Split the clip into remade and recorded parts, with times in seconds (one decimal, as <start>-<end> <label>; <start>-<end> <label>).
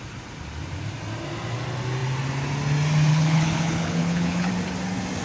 0.0-3.1 recorded; 3.1-4.5 remade; 4.5-5.2 recorded